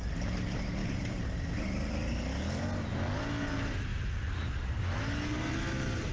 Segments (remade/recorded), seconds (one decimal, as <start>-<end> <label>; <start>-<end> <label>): 0.0-6.1 recorded